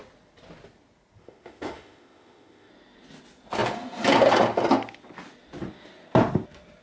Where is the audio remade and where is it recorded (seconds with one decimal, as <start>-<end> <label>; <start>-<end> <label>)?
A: 0.0-1.2 recorded; 1.2-2.7 remade; 2.7-6.8 recorded